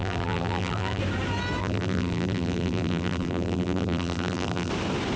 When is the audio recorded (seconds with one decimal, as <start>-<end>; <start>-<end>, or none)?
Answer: 1.0-1.6; 4.7-5.2

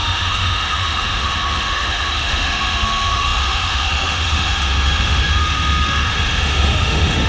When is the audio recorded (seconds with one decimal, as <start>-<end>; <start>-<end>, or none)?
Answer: none

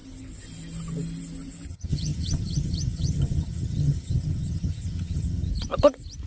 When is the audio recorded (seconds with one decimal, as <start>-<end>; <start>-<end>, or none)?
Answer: 0.0-1.7; 5.5-6.3

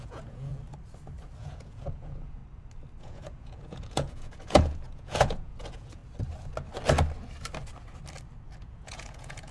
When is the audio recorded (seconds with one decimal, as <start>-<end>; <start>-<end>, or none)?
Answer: 0.5-1.4; 2.4-3.0; 6.0-8.6

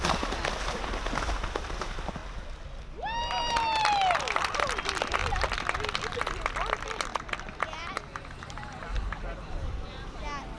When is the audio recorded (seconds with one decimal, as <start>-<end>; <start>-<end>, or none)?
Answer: 0.0-5.2; 6.3-7.1; 10.2-10.6

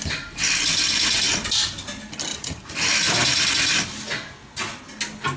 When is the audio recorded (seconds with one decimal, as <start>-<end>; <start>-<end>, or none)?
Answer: 0.0-2.3; 3.5-5.4

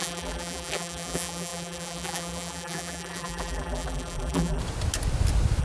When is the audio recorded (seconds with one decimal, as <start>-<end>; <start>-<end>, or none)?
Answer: 4.6-5.6